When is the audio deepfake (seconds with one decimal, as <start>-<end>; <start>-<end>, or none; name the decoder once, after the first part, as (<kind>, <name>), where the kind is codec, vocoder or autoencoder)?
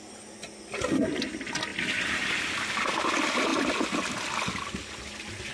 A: none